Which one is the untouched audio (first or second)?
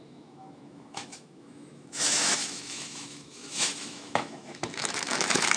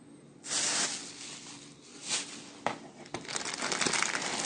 second